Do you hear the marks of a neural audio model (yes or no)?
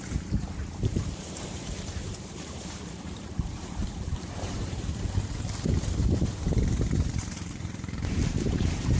yes